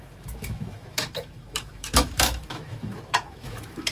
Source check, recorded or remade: remade